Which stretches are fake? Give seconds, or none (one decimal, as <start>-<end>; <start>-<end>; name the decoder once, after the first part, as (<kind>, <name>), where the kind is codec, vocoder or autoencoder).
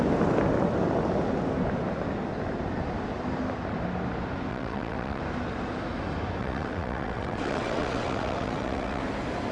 4.5-5.2 (vocoder, WaveNeXt); 6.4-9.0